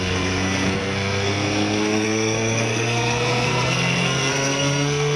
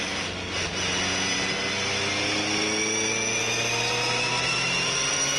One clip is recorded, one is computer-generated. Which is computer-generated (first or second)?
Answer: first